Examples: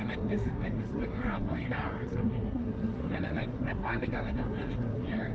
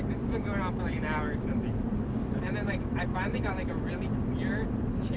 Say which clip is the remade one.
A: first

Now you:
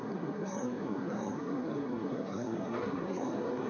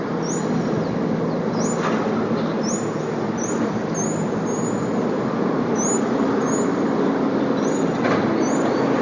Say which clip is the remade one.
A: first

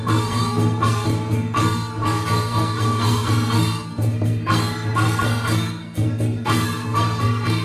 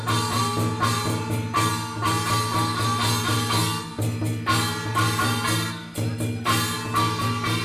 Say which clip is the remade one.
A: first